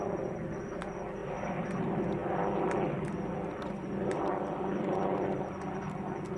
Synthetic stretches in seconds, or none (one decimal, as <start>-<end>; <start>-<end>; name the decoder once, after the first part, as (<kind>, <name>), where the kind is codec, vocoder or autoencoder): none